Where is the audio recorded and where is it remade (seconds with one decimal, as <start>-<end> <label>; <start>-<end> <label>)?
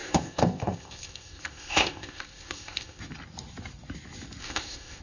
0.0-3.0 remade; 3.0-4.4 recorded; 4.4-5.0 remade